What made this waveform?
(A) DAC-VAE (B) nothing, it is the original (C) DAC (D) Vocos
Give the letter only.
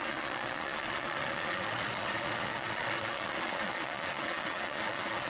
D